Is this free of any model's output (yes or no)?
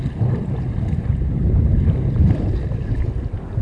yes